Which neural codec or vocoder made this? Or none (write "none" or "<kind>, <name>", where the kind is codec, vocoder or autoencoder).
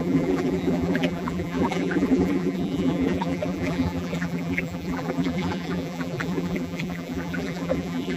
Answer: vocoder, BigVGAN v2